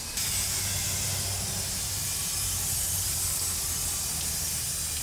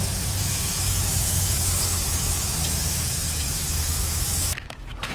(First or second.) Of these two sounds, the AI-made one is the second